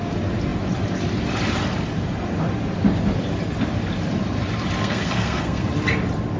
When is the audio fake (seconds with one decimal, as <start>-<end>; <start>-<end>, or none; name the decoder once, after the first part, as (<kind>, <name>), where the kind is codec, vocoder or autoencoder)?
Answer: 4.8-5.7 (codec, SNAC)